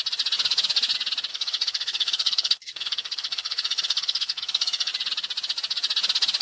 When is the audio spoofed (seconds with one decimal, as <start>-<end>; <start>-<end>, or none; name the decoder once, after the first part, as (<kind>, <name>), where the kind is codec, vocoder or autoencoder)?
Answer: 1.3-4.9 (codec, SNAC)